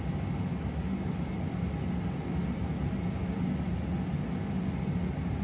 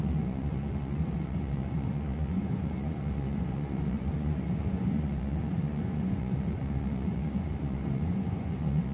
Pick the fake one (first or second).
second